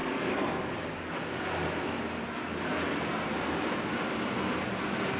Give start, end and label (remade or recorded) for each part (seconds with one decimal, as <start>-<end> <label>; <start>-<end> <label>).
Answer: 0.0-1.2 remade; 1.2-5.2 recorded